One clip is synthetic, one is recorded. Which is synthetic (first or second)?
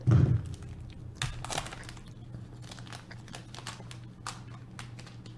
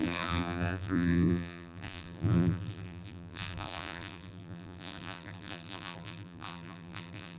second